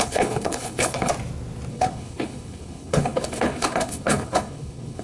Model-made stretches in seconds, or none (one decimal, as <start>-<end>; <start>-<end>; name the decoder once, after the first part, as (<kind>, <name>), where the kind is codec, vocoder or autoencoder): 0.0-1.1 (codec, HILCodec); 1.7-5.0